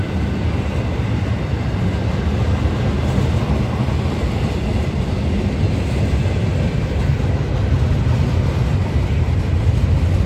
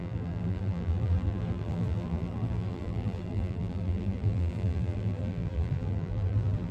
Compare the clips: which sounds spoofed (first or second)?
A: second